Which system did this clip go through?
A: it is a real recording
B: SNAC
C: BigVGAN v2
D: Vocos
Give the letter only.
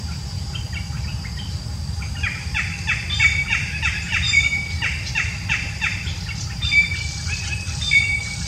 C